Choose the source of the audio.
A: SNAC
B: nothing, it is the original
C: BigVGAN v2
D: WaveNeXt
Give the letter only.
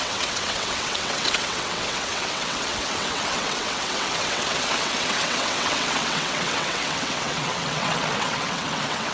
D